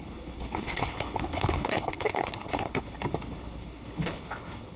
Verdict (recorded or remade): remade